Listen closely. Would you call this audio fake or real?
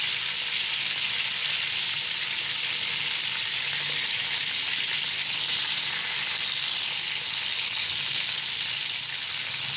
real